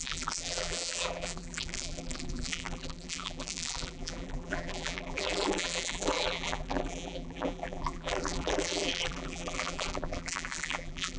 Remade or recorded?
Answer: remade